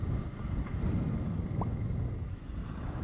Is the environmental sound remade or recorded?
recorded